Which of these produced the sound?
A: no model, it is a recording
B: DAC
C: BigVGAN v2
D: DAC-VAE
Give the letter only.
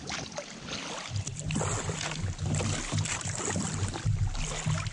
A